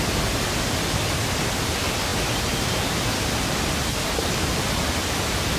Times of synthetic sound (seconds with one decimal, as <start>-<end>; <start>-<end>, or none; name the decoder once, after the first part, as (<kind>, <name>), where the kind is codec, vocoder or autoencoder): none